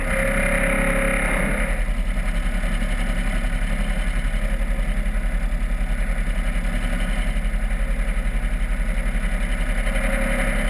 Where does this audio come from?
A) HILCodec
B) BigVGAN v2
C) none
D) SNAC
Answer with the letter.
C